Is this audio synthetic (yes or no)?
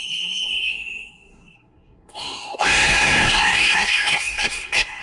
yes